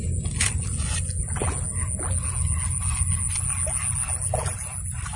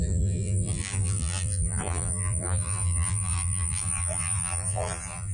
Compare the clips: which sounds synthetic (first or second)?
second